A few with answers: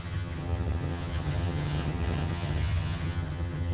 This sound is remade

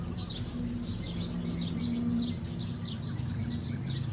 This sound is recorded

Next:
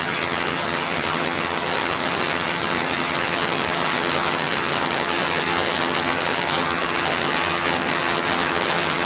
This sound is remade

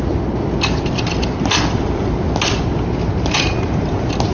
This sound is recorded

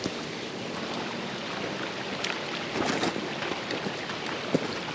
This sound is recorded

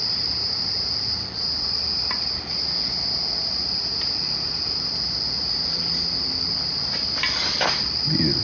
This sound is recorded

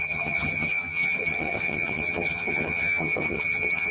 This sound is remade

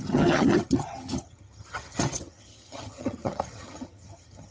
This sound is remade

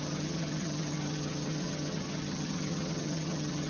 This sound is remade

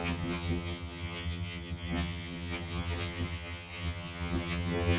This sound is remade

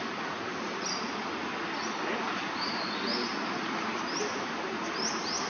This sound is recorded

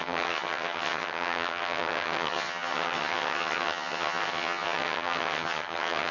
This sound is remade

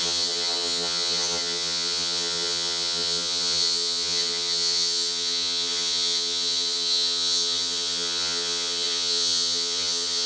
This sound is remade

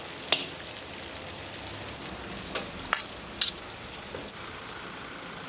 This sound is recorded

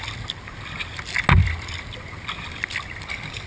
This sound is recorded